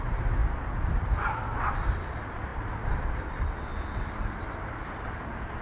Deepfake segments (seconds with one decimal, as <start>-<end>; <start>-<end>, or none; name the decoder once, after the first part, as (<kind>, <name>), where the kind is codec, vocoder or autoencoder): none